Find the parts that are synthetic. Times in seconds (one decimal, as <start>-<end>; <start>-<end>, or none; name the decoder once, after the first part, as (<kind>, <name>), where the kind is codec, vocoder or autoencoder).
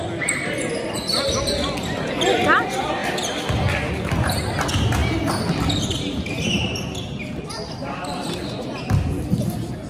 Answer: none